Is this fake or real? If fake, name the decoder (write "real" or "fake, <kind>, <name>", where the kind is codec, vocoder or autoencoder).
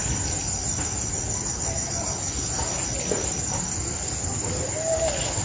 real